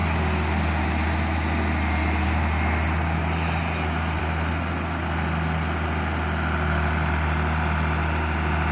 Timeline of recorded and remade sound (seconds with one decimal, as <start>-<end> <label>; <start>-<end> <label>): 0.0-8.7 recorded